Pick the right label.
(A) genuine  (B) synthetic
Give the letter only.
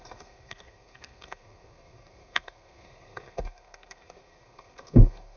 B